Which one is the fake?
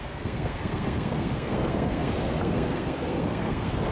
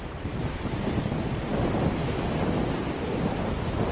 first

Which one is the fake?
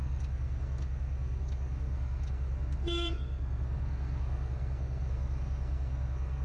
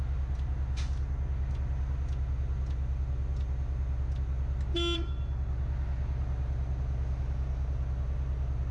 first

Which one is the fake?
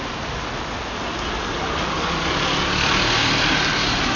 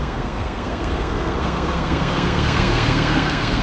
second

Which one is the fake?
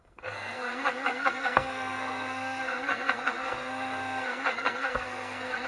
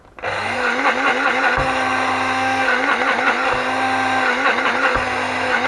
first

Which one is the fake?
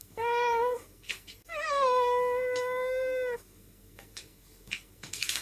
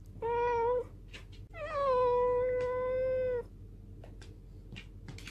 first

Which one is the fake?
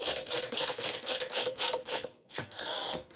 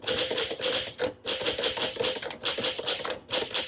first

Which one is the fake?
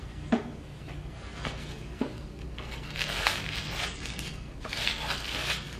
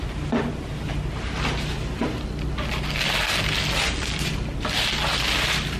first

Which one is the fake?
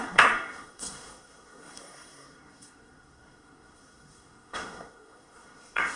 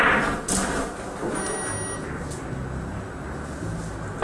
first